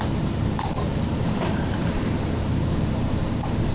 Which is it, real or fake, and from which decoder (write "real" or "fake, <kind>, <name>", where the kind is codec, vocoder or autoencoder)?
fake, vocoder, BigVGAN v2